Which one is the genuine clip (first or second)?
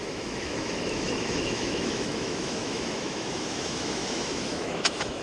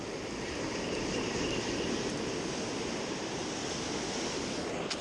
second